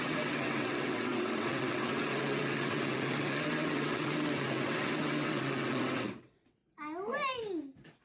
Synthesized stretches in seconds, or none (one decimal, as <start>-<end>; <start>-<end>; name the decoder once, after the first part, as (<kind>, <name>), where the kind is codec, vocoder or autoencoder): 0.0-6.6 (vocoder, WaveNeXt)